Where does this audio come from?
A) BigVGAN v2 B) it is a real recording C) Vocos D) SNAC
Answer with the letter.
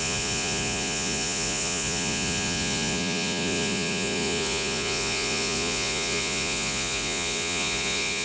C